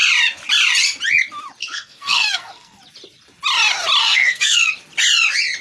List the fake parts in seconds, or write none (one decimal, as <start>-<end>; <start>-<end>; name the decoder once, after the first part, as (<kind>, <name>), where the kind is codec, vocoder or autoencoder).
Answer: 1.6-2.8 (codec, SNAC); 4.0-4.7